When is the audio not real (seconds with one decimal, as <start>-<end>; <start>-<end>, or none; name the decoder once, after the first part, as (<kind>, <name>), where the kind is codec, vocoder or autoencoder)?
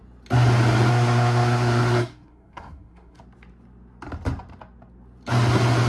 0.9-3.2 (codec, SNAC)